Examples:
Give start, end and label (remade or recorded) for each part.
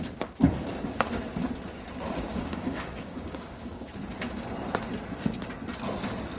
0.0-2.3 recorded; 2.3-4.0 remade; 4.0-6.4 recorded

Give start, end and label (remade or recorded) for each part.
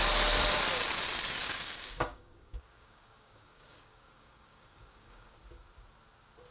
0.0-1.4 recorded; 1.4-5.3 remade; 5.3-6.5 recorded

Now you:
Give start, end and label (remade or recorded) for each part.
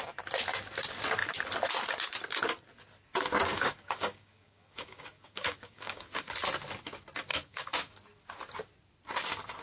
0.0-3.5 recorded; 3.5-6.3 remade; 6.3-7.3 recorded; 7.3-7.9 remade; 7.9-9.6 recorded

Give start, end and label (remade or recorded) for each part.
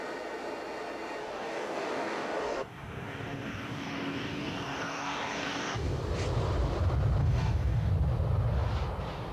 0.0-1.2 recorded; 1.2-6.0 remade; 6.0-7.2 recorded; 7.2-7.9 remade; 7.9-9.3 recorded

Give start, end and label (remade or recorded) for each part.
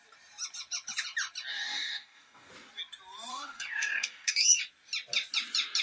0.0-1.5 recorded; 1.5-2.5 remade; 2.5-3.3 recorded; 3.3-4.6 remade; 4.6-5.8 recorded